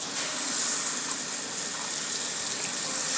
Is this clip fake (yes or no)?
no